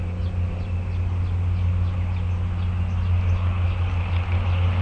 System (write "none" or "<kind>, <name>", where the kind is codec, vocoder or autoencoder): none